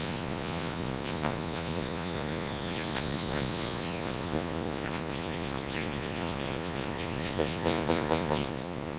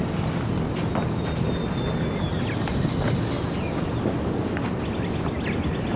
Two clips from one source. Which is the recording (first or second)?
second